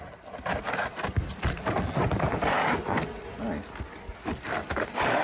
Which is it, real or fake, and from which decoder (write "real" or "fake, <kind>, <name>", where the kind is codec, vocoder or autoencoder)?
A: real